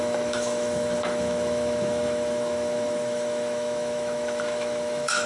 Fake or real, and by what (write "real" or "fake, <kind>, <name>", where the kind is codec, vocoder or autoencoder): fake, autoencoder, DAC-VAE